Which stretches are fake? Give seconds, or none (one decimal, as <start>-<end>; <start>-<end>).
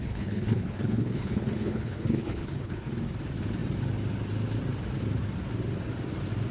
0.0-2.9